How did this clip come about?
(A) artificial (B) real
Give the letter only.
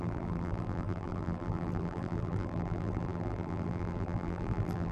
A